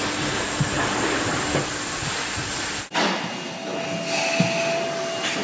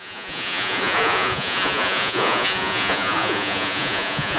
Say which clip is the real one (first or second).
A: first